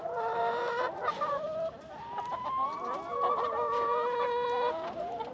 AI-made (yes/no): no